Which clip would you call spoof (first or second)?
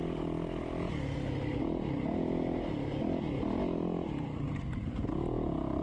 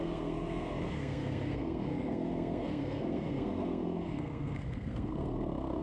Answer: second